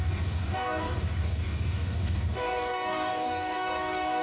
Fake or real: fake